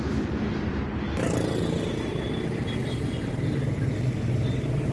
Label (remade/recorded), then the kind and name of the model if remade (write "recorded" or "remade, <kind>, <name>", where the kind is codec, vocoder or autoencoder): recorded